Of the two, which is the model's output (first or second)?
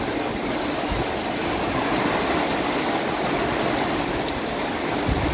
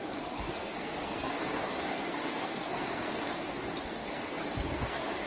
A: second